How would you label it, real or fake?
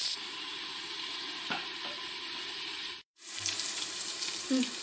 fake